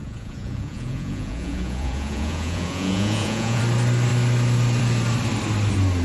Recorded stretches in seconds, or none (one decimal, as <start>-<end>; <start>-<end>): 3.6-6.0